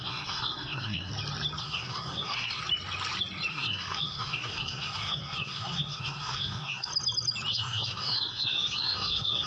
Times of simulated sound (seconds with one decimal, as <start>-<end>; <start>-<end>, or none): 0.0-1.1; 1.6-2.6; 3.5-6.9; 7.5-9.5